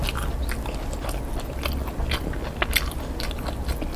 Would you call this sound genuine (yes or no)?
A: yes